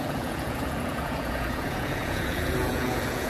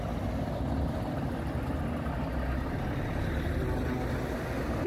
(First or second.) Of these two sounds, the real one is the second